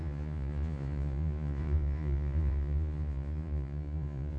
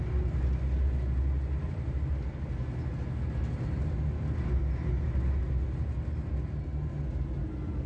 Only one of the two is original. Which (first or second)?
second